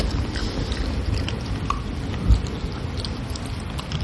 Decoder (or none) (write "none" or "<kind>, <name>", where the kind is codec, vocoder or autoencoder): none